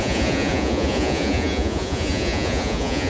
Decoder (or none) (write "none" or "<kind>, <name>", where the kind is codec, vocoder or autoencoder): vocoder, Vocos